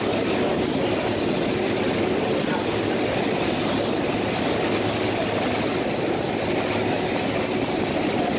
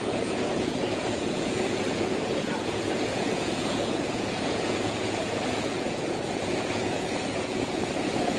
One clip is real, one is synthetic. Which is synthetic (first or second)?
second